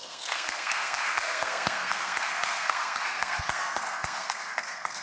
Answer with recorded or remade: remade